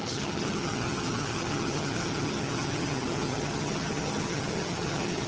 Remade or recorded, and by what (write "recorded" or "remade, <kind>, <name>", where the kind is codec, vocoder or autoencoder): remade, vocoder, HiFi-GAN